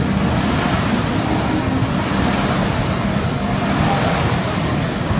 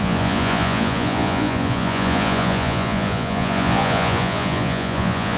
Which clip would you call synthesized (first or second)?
second